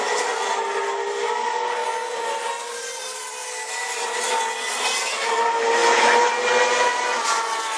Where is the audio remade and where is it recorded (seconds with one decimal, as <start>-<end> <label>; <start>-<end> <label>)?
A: 0.0-3.4 recorded; 3.4-4.3 remade; 4.3-7.8 recorded